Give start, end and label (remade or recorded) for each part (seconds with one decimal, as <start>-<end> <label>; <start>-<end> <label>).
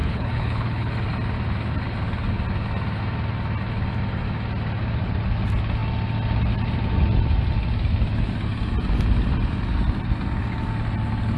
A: 0.0-0.9 remade; 0.9-11.4 recorded